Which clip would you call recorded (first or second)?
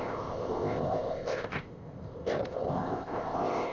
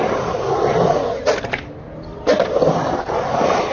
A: second